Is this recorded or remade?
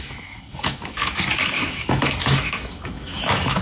remade